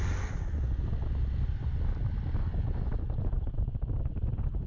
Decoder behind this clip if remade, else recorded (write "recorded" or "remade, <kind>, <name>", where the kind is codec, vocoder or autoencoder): recorded